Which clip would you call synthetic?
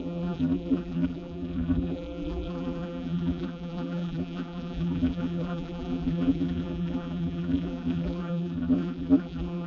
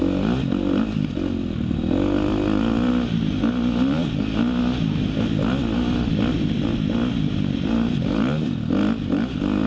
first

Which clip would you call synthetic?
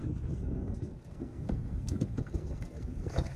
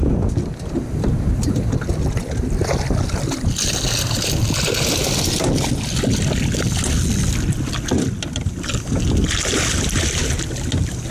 first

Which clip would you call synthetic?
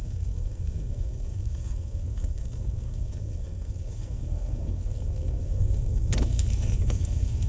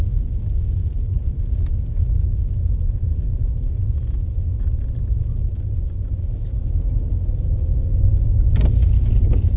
first